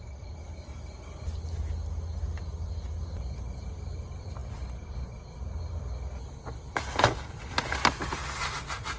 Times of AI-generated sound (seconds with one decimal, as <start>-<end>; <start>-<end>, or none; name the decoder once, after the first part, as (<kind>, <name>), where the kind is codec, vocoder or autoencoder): none